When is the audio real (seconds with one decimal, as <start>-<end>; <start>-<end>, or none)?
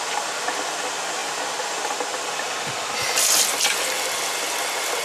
0.0-5.0